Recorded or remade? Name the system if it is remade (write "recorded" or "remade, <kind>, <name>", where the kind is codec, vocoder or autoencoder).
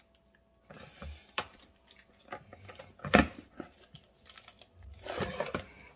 recorded